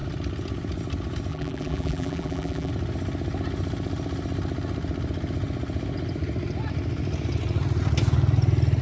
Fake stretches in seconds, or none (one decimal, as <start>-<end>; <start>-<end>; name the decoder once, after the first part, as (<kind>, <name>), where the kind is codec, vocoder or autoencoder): 1.3-2.7 (vocoder, BigVGAN v2)